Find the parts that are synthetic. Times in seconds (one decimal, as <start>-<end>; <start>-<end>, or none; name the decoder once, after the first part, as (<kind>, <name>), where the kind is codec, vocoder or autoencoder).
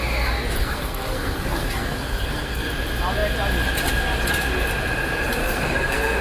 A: 0.6-2.7 (codec, SNAC); 5.4-6.2